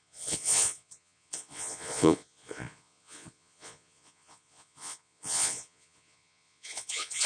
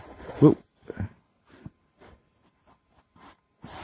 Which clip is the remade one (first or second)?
first